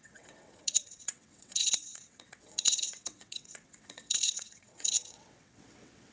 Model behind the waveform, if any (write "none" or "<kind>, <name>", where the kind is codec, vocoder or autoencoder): vocoder, WaveNeXt